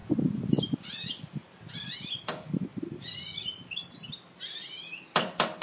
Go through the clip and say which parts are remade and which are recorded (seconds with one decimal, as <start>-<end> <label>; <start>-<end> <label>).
0.0-5.6 recorded